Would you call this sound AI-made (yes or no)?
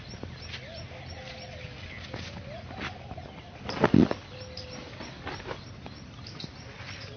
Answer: no